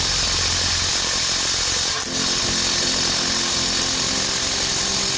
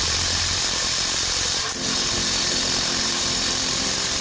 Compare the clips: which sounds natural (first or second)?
first